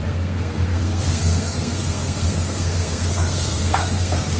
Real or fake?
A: fake